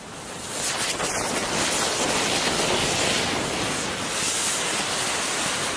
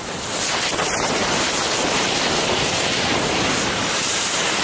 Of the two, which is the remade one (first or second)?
second